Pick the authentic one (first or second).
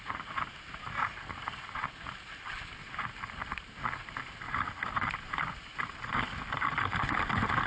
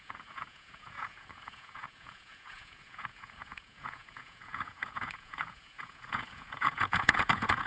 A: first